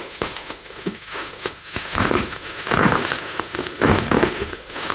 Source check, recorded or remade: remade